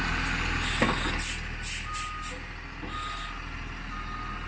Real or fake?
real